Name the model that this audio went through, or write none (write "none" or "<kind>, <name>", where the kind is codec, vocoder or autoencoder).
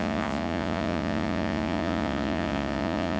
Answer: vocoder, Vocos